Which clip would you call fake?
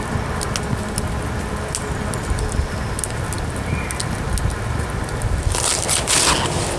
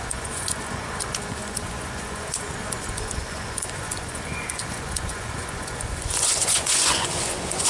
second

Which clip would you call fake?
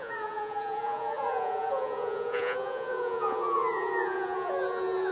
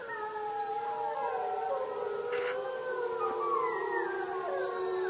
first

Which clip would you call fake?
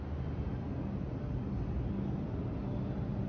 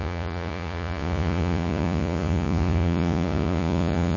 second